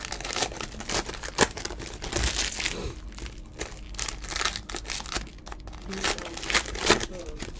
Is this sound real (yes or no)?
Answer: yes